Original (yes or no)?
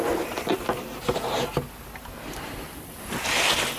yes